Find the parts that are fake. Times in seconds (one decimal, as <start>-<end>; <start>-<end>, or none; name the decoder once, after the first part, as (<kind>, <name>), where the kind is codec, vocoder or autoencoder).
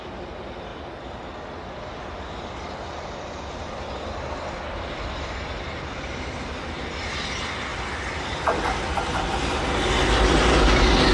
none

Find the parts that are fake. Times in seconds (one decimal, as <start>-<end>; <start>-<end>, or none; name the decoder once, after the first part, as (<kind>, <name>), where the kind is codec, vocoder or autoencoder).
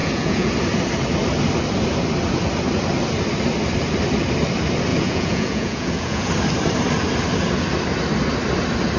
0.0-0.5 (vocoder, Vocos); 4.9-6.3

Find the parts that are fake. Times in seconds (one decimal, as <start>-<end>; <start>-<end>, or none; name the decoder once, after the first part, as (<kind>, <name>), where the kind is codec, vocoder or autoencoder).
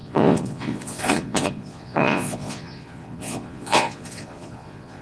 0.0-5.0 (vocoder, Vocos)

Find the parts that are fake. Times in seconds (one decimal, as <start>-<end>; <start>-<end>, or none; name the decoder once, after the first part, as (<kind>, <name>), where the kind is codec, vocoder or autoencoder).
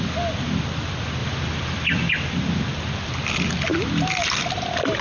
none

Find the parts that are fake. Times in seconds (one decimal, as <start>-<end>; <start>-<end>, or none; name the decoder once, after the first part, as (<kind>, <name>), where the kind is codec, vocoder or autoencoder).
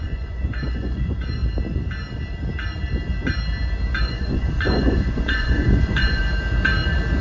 0.0-1.4 (vocoder, Vocos); 4.0-6.2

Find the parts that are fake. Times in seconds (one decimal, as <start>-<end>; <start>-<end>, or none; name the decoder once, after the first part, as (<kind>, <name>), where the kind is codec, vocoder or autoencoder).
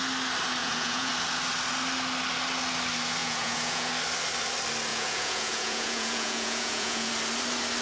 0.6-1.1 (vocoder, Vocos); 3.2-3.9; 4.9-7.1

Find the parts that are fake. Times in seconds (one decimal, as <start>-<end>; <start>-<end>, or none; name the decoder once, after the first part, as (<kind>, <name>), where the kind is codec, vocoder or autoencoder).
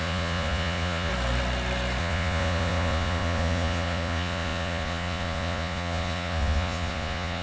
0.0-1.1 (vocoder, Vocos); 2.0-7.4